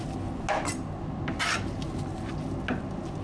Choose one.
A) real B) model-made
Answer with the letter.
A